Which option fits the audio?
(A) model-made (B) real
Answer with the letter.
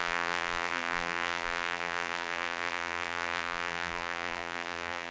A